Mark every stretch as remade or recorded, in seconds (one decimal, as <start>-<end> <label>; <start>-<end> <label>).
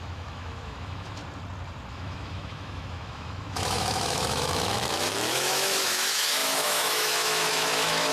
0.0-1.2 remade; 1.2-1.9 recorded; 1.9-8.1 remade